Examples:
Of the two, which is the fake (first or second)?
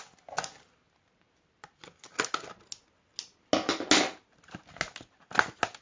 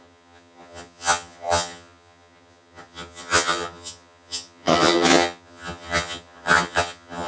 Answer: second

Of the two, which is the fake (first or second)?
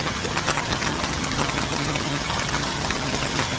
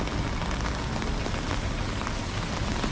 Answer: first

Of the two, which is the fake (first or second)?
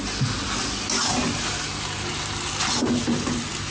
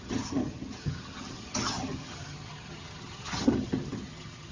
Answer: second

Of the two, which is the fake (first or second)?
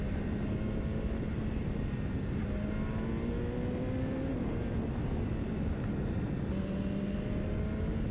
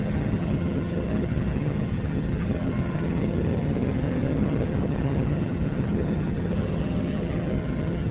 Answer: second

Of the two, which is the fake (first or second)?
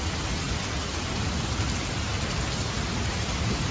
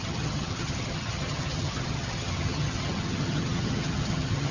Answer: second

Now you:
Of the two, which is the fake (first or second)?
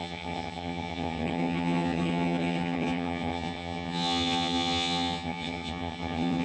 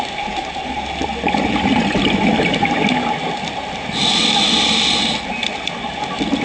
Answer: first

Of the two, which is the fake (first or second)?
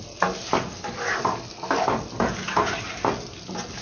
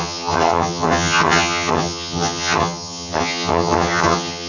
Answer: second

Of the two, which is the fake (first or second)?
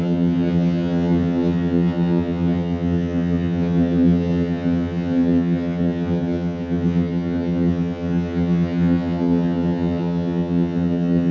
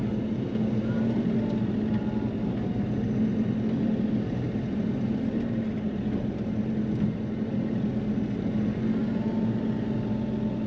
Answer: first